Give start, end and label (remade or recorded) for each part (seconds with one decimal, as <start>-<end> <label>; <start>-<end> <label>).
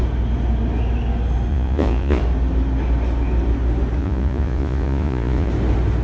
0.0-1.5 recorded; 1.5-2.2 remade; 2.2-4.0 recorded; 4.0-5.5 remade; 5.5-6.0 recorded